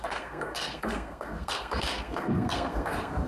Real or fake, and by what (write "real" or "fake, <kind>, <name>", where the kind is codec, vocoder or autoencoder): fake, codec, SNAC